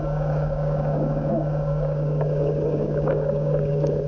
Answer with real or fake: fake